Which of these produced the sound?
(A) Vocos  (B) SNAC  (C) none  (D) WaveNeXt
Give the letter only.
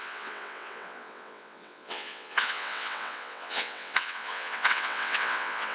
D